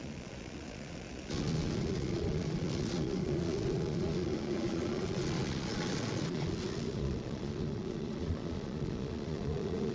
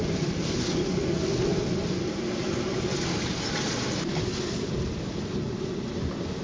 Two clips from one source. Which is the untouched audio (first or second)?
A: second